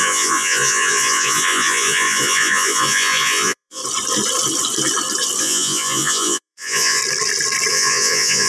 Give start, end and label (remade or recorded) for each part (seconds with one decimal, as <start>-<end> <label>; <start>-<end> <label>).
0.0-3.8 remade; 3.8-5.4 recorded; 5.4-7.0 remade; 7.0-7.7 recorded; 7.7-8.5 remade